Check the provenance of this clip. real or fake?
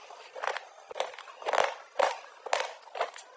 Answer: real